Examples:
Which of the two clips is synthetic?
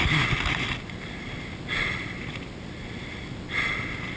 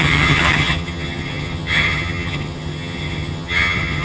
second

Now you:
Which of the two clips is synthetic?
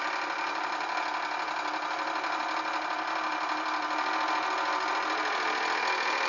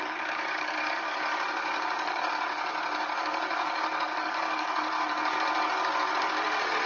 second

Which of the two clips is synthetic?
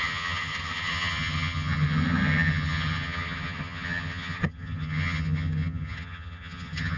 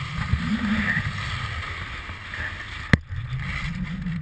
first